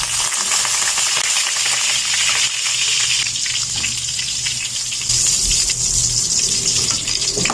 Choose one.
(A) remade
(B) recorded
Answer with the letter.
B